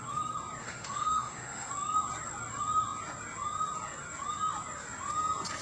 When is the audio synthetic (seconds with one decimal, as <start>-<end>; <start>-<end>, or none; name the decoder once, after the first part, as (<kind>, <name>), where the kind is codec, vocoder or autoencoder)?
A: 0.6-1.7 (autoencoder, DAC-VAE)